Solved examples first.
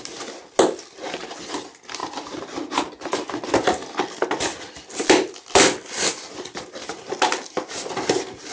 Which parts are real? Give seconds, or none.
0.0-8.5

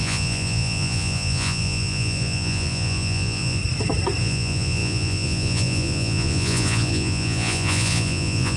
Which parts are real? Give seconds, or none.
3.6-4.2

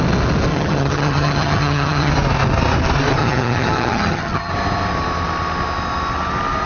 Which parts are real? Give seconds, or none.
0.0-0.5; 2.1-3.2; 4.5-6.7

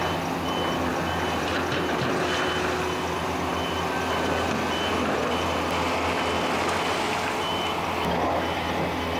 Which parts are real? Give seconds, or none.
0.0-9.2